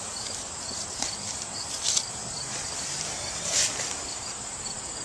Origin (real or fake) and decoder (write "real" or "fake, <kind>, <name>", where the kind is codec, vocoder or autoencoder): fake, vocoder, BigVGAN v2